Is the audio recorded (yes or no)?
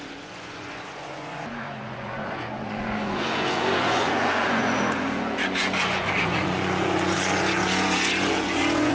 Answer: no